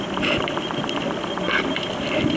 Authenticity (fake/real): real